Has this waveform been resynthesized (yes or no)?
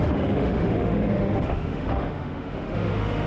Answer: yes